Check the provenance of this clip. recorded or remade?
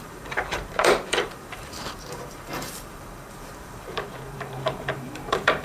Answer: remade